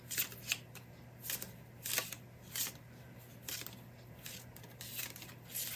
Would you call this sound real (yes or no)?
yes